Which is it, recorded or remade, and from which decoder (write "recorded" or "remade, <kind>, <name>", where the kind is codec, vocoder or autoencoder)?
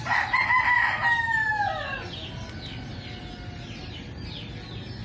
recorded